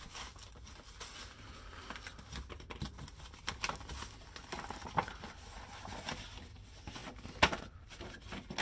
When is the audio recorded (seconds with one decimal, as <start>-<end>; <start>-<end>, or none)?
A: 0.0-8.6

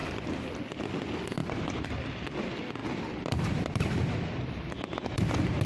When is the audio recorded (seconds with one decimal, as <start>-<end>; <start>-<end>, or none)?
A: 0.8-2.8; 5.2-5.7

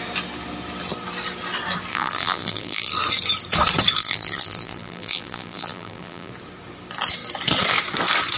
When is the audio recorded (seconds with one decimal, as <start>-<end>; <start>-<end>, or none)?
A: 0.0-1.9; 2.9-4.0; 6.3-8.4

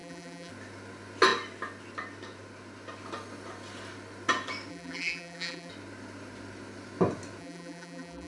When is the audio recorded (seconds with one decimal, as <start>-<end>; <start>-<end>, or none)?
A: 0.5-4.7; 5.7-7.4